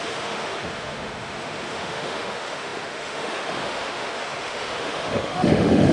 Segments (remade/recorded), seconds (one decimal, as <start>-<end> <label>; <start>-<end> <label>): 0.0-5.9 remade